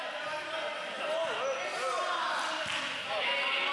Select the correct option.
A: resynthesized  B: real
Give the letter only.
B